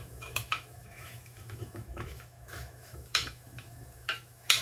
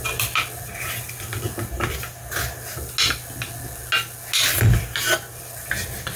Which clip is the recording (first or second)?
second